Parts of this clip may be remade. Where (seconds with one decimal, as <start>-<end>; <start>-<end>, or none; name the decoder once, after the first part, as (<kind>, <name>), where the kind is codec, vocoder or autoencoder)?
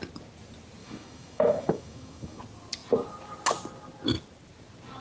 0.8-2.4 (autoencoder, DAC-VAE)